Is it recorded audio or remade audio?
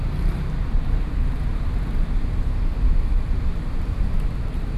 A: remade